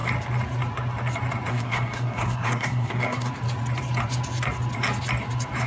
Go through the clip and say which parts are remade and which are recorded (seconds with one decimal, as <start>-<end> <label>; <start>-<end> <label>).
0.0-1.5 recorded; 1.5-3.3 remade; 3.3-5.7 recorded